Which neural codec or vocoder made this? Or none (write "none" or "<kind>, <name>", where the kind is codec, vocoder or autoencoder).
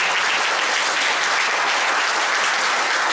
none